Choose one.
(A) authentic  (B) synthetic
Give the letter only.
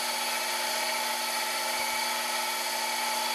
A